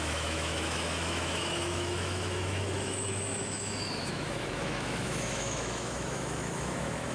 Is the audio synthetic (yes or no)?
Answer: yes